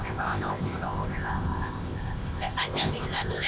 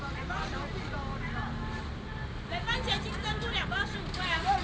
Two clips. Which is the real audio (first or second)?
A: second